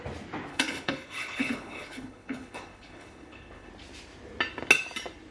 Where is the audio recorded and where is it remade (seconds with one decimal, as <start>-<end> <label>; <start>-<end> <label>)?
0.0-0.5 recorded; 0.5-3.7 remade; 3.7-5.3 recorded

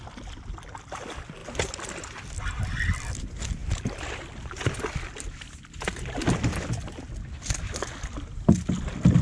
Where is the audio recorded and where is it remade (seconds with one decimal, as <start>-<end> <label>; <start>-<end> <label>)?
0.0-9.2 recorded

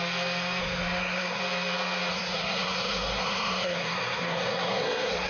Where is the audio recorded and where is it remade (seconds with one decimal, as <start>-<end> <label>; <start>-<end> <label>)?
0.0-0.6 recorded; 0.6-1.4 remade; 1.4-2.1 recorded; 2.1-5.3 remade